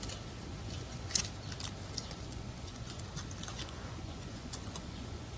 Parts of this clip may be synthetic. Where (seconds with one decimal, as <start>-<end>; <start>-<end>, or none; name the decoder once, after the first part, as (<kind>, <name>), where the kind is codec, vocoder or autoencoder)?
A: 0.5-1.2 (vocoder, Vocos); 2.0-3.0; 3.5-5.4